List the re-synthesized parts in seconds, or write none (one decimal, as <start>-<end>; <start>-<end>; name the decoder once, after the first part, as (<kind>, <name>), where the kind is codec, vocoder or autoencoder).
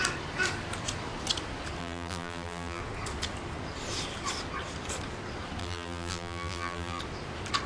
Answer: 1.8-2.8 (vocoder, BigVGAN v2); 5.6-7.0